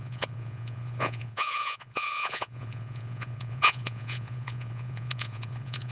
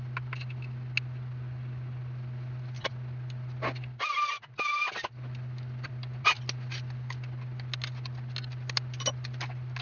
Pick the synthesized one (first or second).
first